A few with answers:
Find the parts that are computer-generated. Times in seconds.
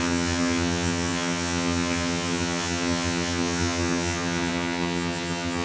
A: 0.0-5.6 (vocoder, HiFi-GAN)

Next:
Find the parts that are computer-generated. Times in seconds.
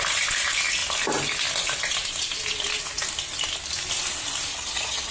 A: 4.5-5.1 (vocoder, HiFi-GAN)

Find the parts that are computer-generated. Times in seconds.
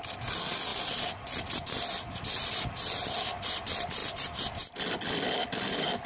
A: none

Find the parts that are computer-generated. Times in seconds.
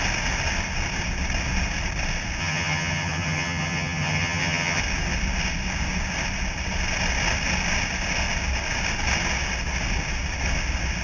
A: 2.4-4.8 (vocoder, HiFi-GAN)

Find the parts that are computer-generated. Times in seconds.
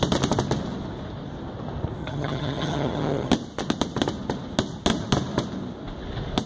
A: 2.0-3.3 (vocoder, HiFi-GAN)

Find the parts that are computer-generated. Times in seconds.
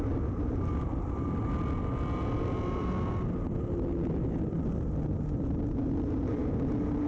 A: none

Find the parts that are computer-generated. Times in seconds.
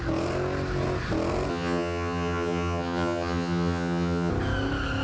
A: 1.5-4.3 (vocoder, HiFi-GAN)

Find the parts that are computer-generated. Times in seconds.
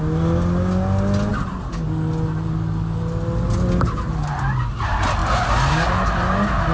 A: none